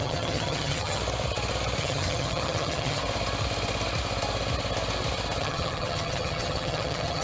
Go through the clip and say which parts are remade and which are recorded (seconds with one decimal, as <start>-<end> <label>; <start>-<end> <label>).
0.0-1.0 remade; 1.0-1.8 recorded; 1.8-3.0 remade; 3.0-5.4 recorded; 5.4-7.2 remade